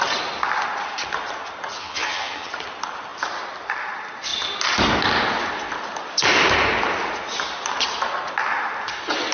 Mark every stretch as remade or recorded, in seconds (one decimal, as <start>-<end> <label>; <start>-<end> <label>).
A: 0.0-1.8 recorded; 1.8-2.5 remade; 2.5-9.3 recorded